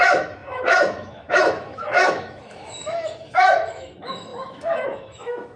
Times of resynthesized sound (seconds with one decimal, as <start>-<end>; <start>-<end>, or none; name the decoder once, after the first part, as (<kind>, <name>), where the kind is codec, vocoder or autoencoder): 0.0-5.6 (autoencoder, DAC-VAE)